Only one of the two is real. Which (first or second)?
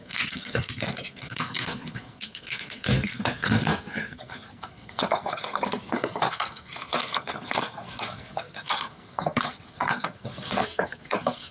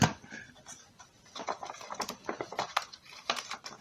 second